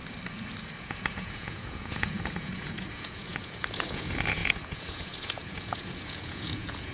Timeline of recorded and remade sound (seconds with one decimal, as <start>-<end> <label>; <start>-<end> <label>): 0.0-0.8 recorded; 0.8-6.9 remade